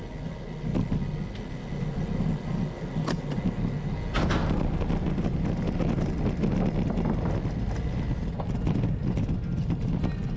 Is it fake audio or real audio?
real